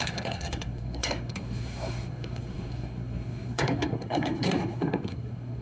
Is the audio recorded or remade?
remade